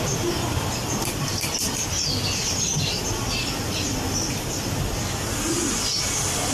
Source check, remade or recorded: recorded